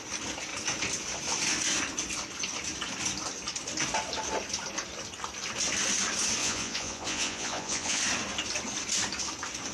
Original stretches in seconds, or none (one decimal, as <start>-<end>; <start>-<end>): 0.0-6.4; 8.0-9.7